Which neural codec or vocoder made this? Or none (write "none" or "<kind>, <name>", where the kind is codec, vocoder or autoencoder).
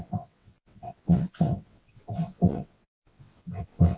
vocoder, WaveNeXt